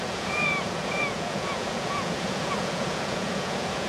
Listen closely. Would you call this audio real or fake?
fake